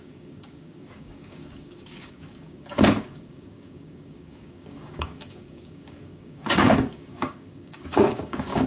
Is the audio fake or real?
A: fake